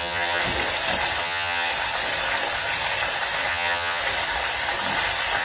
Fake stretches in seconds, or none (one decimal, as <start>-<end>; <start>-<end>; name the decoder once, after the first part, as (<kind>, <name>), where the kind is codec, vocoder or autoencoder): 0.0-0.4 (vocoder, HiFi-GAN); 1.2-1.7; 3.5-4.0